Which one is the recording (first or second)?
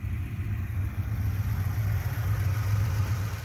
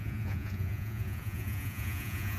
first